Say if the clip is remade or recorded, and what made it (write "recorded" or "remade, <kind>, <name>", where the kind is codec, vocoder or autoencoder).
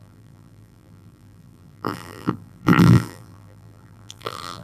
remade, vocoder, BigVGAN v2